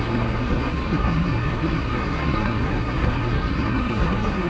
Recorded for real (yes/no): no